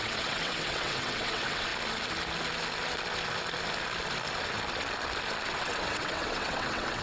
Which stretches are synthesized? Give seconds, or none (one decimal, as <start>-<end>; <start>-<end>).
0.0-1.7; 5.6-7.0